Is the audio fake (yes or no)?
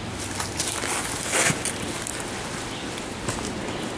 no